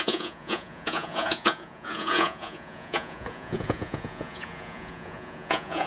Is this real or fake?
fake